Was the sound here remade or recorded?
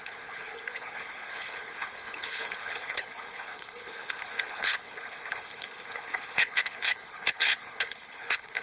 remade